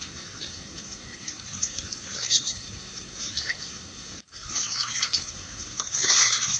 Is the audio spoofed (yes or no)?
yes